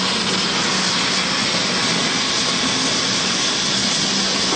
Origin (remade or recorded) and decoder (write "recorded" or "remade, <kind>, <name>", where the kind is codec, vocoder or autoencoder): recorded